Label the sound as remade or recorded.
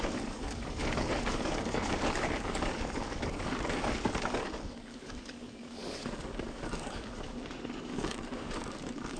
remade